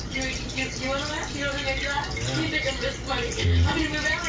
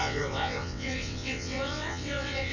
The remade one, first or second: second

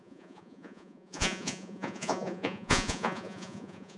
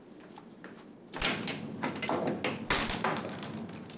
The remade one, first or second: first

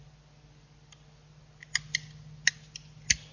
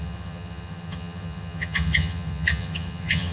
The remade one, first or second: second